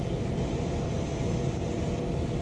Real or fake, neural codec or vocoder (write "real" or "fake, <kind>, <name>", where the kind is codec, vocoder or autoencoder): real